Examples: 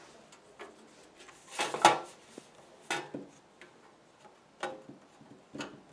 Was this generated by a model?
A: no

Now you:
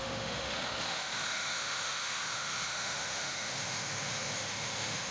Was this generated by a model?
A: yes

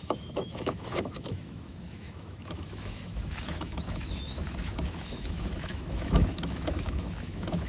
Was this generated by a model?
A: yes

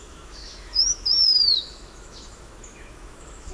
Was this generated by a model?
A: yes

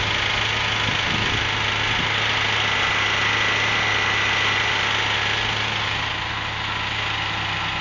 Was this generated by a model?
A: no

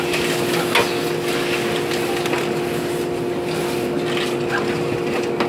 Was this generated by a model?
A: no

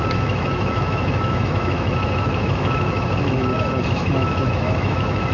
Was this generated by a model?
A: yes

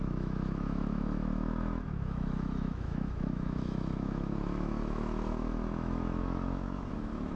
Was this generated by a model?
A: yes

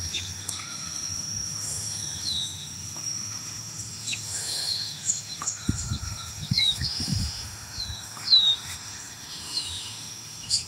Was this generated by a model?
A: yes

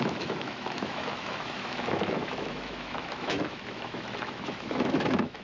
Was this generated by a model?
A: yes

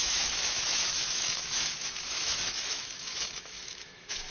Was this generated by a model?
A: yes